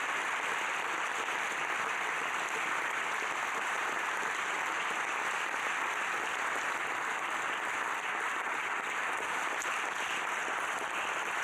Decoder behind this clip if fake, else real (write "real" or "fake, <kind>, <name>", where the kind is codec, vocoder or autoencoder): real